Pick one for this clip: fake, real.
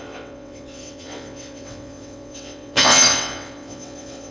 fake